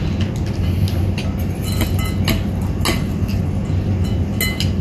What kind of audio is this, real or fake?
real